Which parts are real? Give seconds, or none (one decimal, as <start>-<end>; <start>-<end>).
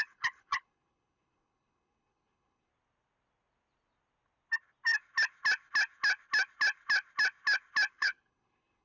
2.7-7.9